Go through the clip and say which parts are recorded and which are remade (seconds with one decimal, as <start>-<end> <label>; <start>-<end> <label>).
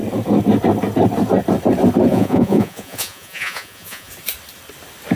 0.0-2.1 recorded; 2.1-4.1 remade; 4.1-5.2 recorded